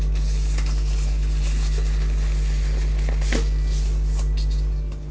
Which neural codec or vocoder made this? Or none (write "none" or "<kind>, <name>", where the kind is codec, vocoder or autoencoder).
none